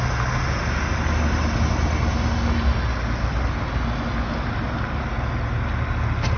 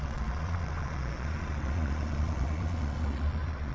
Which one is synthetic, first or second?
second